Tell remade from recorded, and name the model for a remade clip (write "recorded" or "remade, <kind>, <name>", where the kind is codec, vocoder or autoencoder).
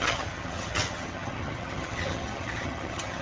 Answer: remade, vocoder, HiFi-GAN